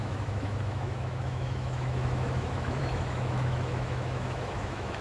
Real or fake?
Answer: fake